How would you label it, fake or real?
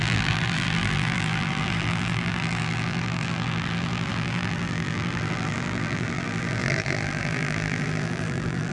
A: fake